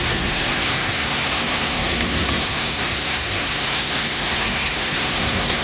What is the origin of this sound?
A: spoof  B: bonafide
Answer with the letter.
A